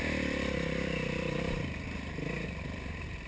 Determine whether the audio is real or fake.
fake